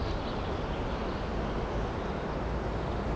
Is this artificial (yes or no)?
no